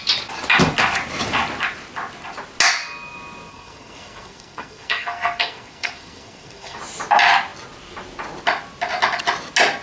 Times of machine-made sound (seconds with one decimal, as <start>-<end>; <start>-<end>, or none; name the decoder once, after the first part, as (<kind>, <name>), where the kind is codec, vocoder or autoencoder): 3.5-6.8 (codec, SNAC)